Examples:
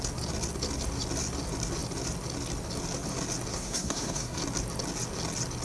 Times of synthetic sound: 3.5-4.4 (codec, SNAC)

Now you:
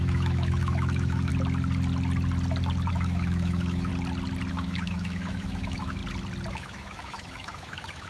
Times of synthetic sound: 0.0-1.3 (autoencoder, DAC-VAE); 2.9-3.9; 4.5-6.0; 6.5-8.1

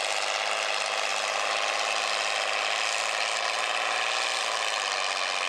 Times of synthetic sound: none

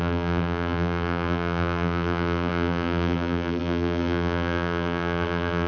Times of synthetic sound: 0.0-5.7 (vocoder, BigVGAN v2)

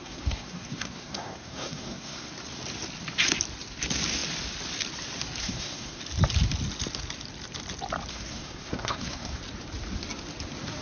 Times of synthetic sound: 0.0-2.3 (codec, SNAC); 5.4-6.0; 8.1-9.4

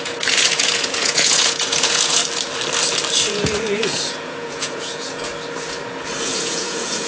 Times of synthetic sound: 0.0-2.2 (vocoder, Vocos); 3.3-5.3; 6.2-7.1

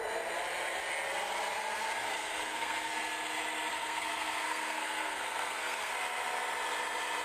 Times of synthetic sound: 2.1-2.9 (codec, SNAC); 3.7-5.9

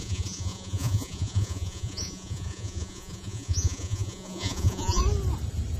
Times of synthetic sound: 0.0-5.0 (vocoder, Vocos)